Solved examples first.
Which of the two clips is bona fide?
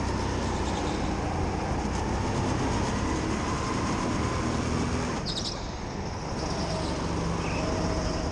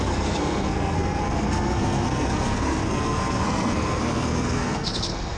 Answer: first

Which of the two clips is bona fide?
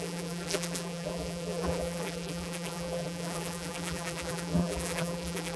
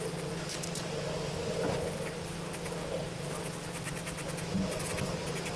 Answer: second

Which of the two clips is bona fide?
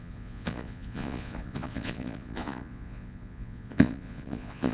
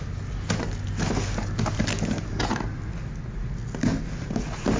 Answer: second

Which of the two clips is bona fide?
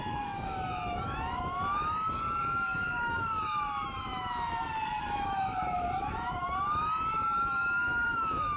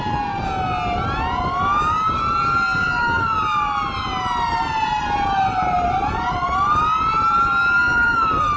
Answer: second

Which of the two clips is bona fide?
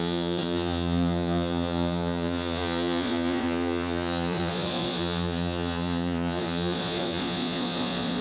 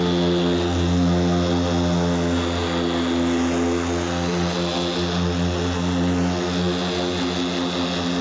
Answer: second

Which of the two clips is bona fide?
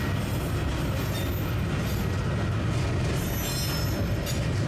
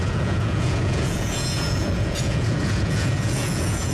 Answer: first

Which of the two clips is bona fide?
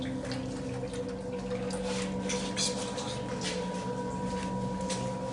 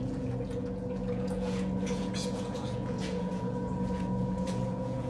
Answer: first